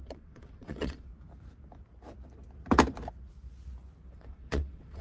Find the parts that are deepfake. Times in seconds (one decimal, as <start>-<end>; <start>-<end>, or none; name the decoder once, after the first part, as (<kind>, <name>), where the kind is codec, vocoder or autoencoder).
0.0-1.1 (vocoder, WaveNeXt); 4.1-5.0